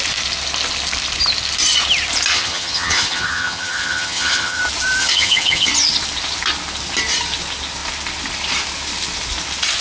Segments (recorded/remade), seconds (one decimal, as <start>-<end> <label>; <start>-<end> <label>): 0.0-2.3 recorded; 2.3-4.6 remade; 4.6-5.0 recorded; 5.0-5.7 remade; 5.7-9.8 recorded

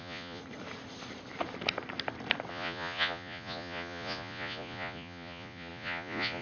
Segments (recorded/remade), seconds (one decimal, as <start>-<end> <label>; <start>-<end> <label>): 0.0-0.4 remade; 0.4-2.5 recorded; 2.5-6.4 remade

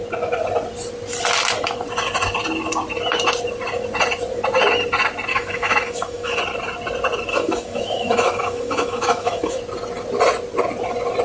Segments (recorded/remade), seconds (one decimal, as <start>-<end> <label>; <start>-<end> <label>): 0.0-5.3 recorded; 5.3-6.4 remade; 6.4-7.3 recorded; 7.3-9.6 remade; 9.6-11.2 recorded

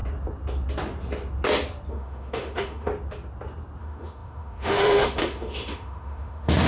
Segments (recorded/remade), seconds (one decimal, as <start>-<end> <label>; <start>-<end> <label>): 0.0-1.9 recorded; 1.9-2.9 remade; 2.9-3.8 recorded; 3.8-6.7 remade

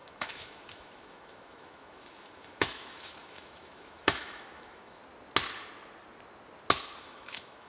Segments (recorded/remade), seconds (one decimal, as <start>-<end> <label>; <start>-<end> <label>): 0.0-5.0 remade; 5.0-7.0 recorded; 7.0-7.7 remade

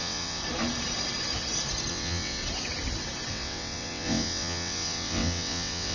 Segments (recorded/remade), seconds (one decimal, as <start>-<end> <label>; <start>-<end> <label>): 0.0-0.4 remade; 0.4-1.9 recorded; 1.9-2.4 remade; 2.4-3.3 recorded; 3.3-5.9 remade

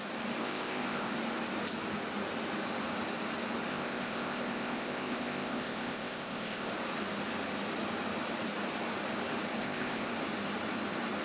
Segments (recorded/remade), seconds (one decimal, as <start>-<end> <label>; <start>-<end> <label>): 0.0-0.4 recorded; 0.4-1.1 remade; 1.1-3.7 recorded; 3.7-6.7 remade; 6.7-9.6 recorded; 9.6-10.1 remade; 10.1-11.2 recorded

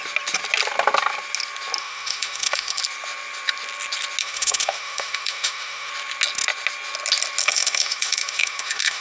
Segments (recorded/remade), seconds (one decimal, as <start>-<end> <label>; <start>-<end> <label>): 0.0-1.8 recorded; 1.8-2.8 remade; 2.8-4.2 recorded; 4.2-5.9 remade; 5.9-7.4 recorded; 7.4-9.0 remade